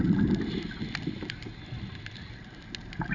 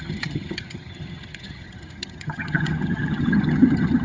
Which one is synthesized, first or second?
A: second